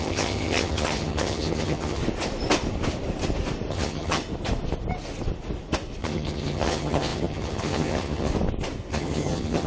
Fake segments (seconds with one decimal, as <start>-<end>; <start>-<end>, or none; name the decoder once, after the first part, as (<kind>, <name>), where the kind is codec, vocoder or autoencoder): 0.0-2.0 (vocoder, HiFi-GAN); 3.7-4.2; 6.0-8.3; 8.9-9.7